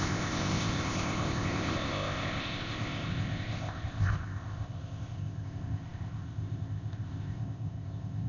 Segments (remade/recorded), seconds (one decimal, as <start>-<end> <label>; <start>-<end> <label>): 0.0-8.3 remade